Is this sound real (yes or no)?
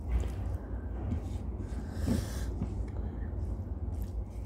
yes